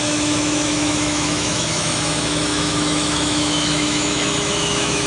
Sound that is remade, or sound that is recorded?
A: remade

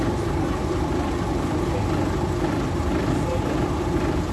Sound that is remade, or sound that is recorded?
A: recorded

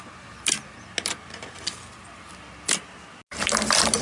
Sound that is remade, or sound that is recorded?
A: recorded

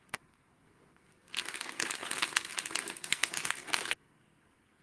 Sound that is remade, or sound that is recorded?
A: remade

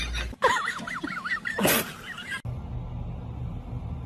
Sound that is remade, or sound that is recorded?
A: recorded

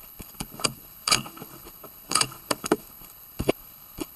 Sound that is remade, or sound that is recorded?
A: remade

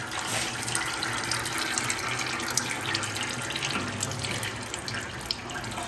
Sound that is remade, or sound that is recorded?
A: recorded